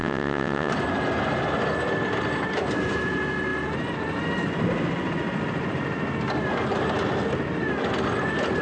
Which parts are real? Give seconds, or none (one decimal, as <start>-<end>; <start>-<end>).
0.7-8.6